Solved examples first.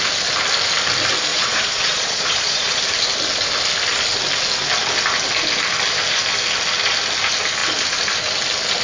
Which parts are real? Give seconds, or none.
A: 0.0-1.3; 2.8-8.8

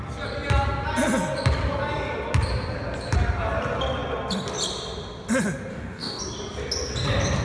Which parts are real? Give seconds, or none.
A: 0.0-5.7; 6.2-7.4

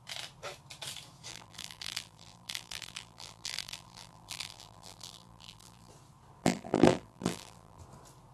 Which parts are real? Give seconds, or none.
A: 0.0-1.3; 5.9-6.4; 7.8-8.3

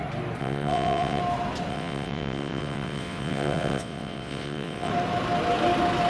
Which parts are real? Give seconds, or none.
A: 0.0-0.4; 1.2-1.7; 4.9-6.1

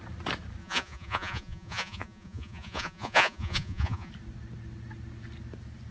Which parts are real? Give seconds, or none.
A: 0.0-0.6; 4.1-5.9

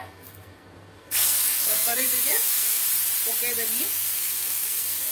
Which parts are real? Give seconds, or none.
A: 2.8-3.8